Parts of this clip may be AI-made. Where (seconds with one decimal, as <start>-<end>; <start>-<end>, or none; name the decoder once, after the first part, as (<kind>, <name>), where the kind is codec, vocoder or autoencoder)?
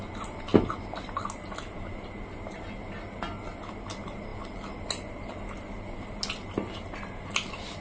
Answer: none